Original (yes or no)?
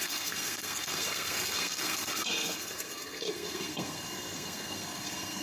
no